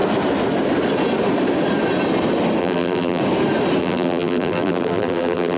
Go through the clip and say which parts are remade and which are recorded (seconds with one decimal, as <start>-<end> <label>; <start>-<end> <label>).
0.0-2.6 recorded; 2.6-3.2 remade; 3.2-3.8 recorded; 3.8-5.6 remade

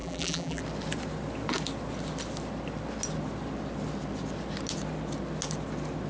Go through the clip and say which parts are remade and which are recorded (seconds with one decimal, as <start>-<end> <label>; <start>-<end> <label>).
0.0-0.6 remade; 0.6-6.1 recorded

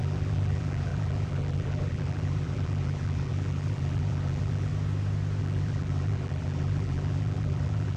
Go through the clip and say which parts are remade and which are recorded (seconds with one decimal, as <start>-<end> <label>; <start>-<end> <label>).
0.0-4.7 remade; 4.7-5.4 recorded; 5.4-8.0 remade

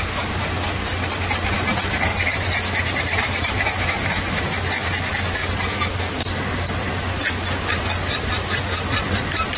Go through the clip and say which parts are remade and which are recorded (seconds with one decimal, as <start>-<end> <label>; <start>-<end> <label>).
0.0-2.1 recorded; 2.1-4.4 remade; 4.4-9.6 recorded

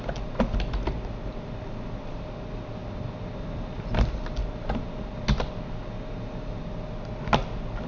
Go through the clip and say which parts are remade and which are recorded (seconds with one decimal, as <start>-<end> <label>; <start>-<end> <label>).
0.0-2.8 recorded; 2.8-3.8 remade; 3.8-7.9 recorded

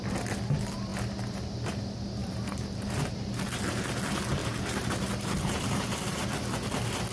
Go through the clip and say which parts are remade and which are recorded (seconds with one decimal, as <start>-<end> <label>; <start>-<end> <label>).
0.0-2.2 recorded; 2.2-3.6 remade; 3.6-4.4 recorded; 4.4-6.3 remade; 6.3-7.1 recorded

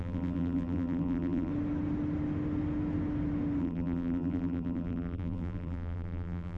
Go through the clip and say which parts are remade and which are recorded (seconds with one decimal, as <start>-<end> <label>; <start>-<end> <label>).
0.0-1.5 remade; 1.5-3.6 recorded; 3.6-6.6 remade

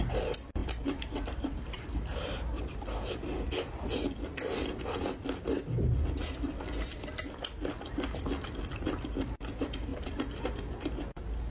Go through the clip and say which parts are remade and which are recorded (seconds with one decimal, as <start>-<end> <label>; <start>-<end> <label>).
0.0-0.6 recorded; 0.6-2.6 remade; 2.6-9.9 recorded; 9.9-10.4 remade; 10.4-11.5 recorded